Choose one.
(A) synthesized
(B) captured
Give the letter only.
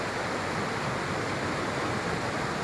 B